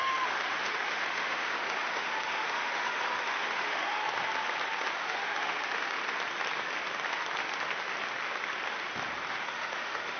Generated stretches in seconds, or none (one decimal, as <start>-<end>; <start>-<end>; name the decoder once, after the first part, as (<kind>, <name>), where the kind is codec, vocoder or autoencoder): 0.0-4.0 (autoencoder, DAC-VAE); 5.0-6.0; 9.3-10.2